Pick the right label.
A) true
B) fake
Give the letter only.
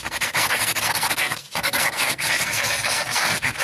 B